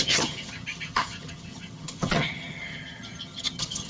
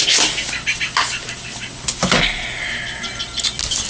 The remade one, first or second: first